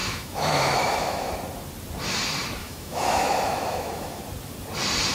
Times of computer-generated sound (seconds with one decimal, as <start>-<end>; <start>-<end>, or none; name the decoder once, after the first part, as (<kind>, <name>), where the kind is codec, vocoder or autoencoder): 0.0-1.3 (autoencoder, DAC-VAE); 2.6-4.2